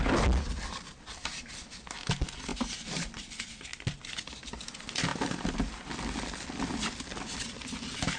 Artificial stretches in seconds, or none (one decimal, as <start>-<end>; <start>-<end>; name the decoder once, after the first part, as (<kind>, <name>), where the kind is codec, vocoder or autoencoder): none